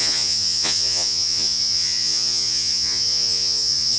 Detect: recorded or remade remade